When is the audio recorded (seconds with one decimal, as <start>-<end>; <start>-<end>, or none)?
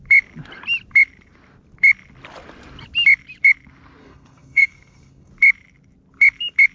0.0-4.0; 5.3-6.7